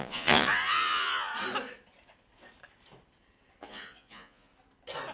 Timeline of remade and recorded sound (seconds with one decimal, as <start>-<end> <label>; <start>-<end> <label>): 0.0-1.3 remade; 1.3-3.6 recorded; 3.6-4.5 remade; 4.5-5.1 recorded